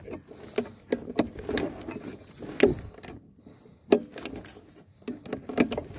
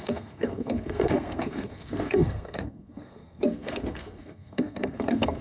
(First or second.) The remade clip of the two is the second